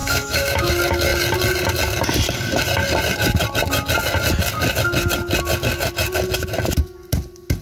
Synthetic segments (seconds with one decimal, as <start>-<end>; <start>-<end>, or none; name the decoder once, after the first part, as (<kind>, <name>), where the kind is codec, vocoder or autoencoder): 0.0-0.7 (autoencoder, DAC-VAE)